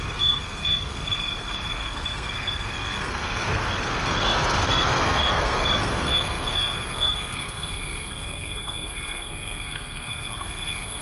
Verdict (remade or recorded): remade